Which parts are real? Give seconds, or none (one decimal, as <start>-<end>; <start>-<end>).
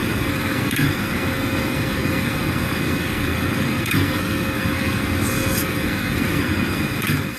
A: none